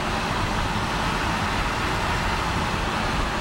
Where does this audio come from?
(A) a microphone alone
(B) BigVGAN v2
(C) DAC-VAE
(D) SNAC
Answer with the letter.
A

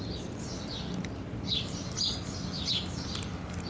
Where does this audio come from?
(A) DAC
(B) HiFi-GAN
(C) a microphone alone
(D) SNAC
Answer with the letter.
C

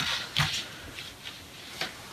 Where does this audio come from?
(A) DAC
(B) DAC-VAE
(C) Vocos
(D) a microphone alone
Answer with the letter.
D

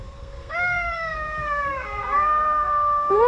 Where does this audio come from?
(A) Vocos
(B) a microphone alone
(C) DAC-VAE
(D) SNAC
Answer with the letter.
D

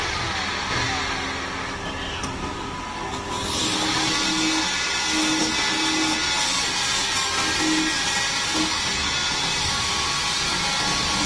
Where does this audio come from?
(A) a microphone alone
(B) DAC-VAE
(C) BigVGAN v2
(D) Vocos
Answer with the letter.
A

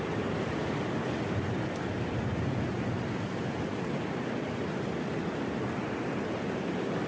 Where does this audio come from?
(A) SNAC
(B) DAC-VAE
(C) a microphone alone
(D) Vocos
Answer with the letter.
C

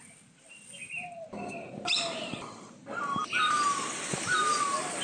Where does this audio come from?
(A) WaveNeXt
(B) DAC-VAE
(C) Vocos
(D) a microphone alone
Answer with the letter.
D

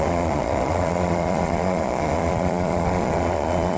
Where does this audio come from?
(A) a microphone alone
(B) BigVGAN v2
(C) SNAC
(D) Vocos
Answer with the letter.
D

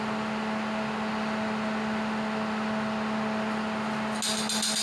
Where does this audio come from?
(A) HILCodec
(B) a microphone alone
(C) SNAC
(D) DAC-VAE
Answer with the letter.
B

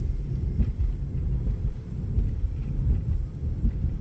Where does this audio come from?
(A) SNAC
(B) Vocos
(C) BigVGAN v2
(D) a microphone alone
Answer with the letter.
C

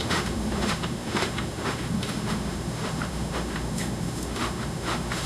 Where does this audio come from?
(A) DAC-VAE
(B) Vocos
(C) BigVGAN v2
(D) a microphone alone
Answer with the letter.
A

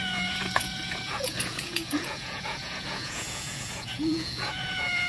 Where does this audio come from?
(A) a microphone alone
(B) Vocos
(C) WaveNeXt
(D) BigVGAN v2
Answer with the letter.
B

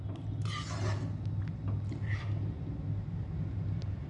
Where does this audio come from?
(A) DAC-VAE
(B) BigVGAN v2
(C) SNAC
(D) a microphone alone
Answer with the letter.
D